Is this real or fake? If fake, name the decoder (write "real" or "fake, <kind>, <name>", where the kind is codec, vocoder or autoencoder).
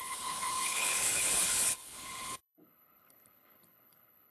fake, codec, HILCodec